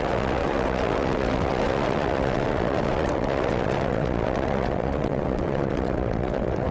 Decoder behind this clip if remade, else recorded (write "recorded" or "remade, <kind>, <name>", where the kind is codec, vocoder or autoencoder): remade, vocoder, WaveNeXt